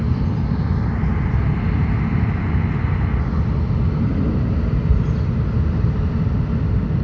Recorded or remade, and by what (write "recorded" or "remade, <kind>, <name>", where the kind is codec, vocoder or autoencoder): recorded